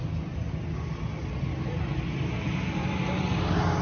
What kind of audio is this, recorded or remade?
recorded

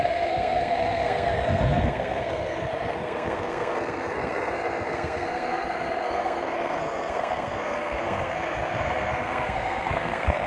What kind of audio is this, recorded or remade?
remade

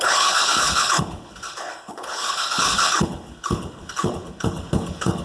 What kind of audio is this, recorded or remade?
remade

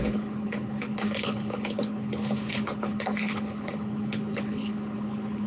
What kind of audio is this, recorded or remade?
remade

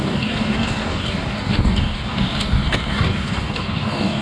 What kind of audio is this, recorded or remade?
remade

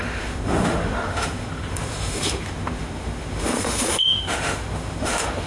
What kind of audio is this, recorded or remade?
remade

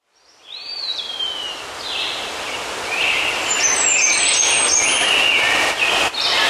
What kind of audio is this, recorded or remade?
recorded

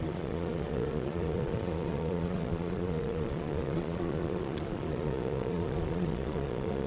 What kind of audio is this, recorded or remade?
remade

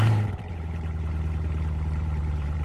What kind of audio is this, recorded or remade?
remade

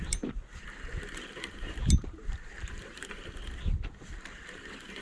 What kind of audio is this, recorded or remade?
remade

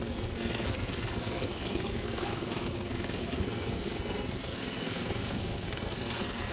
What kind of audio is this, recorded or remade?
remade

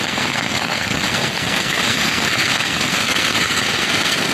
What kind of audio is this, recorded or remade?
remade